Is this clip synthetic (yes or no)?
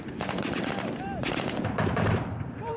yes